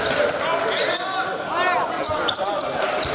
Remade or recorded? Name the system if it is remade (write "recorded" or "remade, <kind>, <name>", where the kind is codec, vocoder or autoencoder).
recorded